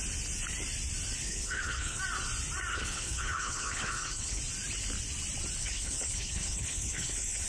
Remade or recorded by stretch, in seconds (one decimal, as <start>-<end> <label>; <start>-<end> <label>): 0.0-1.2 recorded; 1.2-2.0 remade; 2.0-2.7 recorded; 2.7-4.4 remade; 4.4-5.6 recorded; 5.6-7.5 remade